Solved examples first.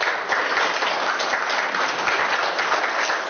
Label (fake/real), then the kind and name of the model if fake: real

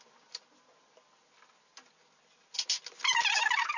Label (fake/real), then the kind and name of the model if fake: real